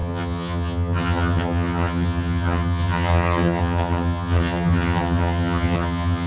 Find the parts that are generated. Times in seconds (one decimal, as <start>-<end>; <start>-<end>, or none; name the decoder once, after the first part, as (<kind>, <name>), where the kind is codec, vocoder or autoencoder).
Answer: 0.0-6.3 (vocoder, HiFi-GAN)